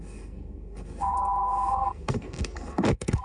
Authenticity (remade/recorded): remade